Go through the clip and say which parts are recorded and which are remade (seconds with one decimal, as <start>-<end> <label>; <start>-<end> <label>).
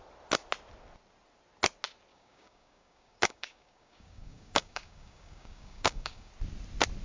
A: 0.0-2.1 recorded; 2.1-6.3 remade; 6.3-7.0 recorded